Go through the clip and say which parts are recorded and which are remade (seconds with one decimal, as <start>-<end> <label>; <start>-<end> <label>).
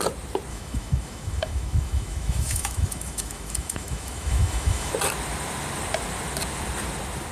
0.0-0.5 recorded; 0.5-4.9 remade; 4.9-7.3 recorded